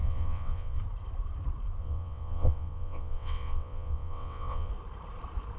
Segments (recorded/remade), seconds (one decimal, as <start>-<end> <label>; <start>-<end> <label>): 0.0-0.8 remade; 0.8-1.8 recorded; 1.8-4.7 remade; 4.7-5.6 recorded